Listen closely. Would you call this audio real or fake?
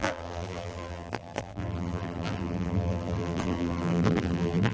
fake